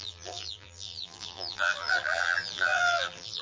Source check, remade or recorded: remade